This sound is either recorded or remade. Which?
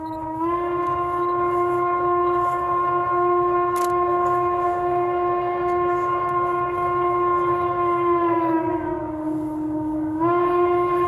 remade